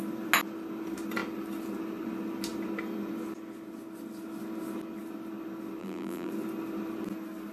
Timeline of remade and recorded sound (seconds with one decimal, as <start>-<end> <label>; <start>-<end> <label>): 0.0-5.8 recorded; 5.8-6.3 remade; 6.3-7.5 recorded

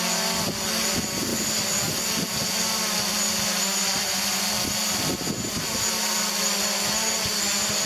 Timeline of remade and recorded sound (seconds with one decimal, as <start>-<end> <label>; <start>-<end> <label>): 0.0-7.9 recorded

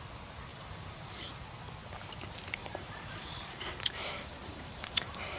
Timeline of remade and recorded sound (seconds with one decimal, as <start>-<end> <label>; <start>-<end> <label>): 0.0-0.5 recorded; 0.5-1.1 remade; 1.1-2.6 recorded; 2.6-5.4 remade

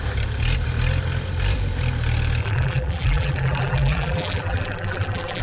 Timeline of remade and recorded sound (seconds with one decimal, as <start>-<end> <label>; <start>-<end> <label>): 0.0-2.4 recorded; 2.4-5.4 remade

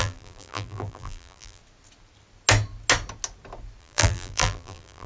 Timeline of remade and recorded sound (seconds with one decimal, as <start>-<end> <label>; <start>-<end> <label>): 0.0-1.6 remade; 1.6-3.8 recorded; 3.8-5.1 remade

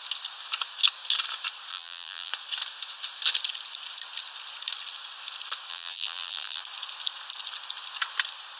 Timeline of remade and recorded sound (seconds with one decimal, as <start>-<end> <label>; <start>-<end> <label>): 0.0-1.7 recorded; 1.7-2.3 remade; 2.3-5.7 recorded; 5.7-6.6 remade; 6.6-8.6 recorded

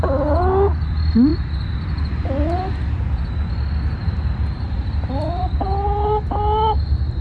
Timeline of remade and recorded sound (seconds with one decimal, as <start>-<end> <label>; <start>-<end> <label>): 0.0-7.2 recorded

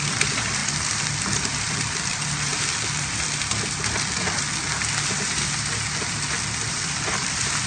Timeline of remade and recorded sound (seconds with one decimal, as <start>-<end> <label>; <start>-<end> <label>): 0.0-0.6 remade; 0.6-1.2 recorded; 1.2-2.5 remade; 2.5-6.7 recorded; 6.7-7.7 remade